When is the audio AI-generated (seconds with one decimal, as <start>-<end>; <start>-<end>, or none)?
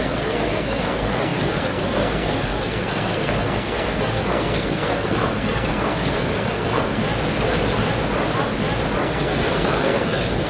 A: 0.0-7.0; 9.0-10.5